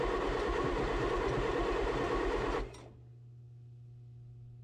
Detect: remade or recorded recorded